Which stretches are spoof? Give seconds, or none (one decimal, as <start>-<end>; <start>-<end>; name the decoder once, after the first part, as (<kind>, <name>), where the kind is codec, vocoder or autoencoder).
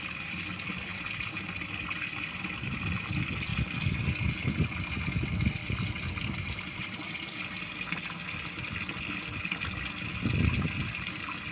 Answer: 5.6-7.3 (vocoder, BigVGAN v2)